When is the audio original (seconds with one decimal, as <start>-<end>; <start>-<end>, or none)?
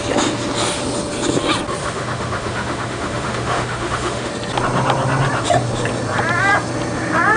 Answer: 0.0-1.8; 4.3-7.4